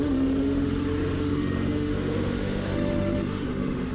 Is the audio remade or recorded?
remade